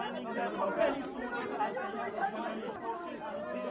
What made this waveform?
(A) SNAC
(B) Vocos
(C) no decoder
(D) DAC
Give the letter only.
C